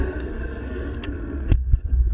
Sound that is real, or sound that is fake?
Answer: fake